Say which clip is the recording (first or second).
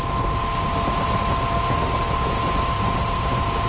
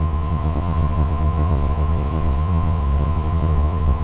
first